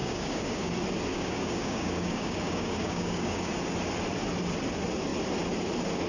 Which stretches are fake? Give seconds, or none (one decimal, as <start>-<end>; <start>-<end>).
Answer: 0.0-0.7; 1.1-3.5